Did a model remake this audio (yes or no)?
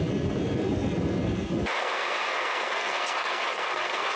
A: yes